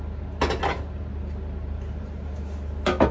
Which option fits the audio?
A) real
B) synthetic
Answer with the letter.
A